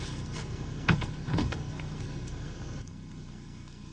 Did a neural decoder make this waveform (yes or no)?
yes